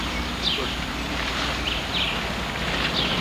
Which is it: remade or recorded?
recorded